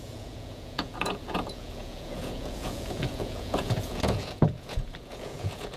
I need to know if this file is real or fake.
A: fake